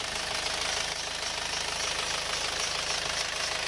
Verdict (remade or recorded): recorded